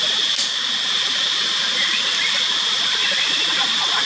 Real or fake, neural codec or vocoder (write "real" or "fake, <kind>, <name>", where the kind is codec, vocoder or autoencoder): real